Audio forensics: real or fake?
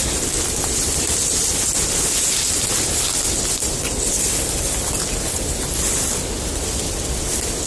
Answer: real